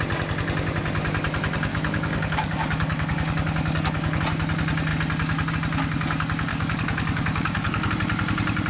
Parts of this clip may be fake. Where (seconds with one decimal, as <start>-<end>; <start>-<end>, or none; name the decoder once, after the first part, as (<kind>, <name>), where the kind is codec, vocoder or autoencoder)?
1.7-4.2 (codec, DAC); 6.5-7.9